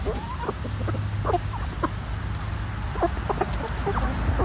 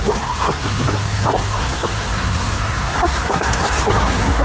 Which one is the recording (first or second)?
first